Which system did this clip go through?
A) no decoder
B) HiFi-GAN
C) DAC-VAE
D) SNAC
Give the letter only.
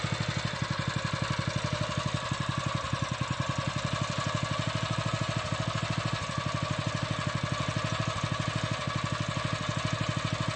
A